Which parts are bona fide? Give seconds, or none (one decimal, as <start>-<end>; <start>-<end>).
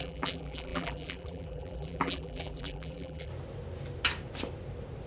3.3-5.1